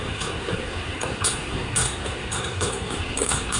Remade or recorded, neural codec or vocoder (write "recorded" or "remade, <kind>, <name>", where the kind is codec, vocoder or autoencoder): remade, codec, SNAC